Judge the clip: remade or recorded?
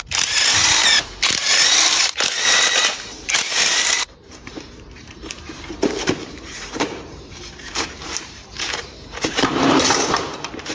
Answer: remade